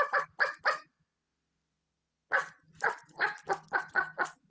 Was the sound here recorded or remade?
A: recorded